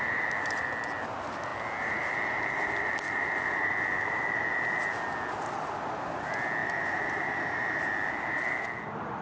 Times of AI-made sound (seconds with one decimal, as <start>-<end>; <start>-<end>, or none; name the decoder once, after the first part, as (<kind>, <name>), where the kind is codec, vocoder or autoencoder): 6.6-7.9 (vocoder, BigVGAN v2)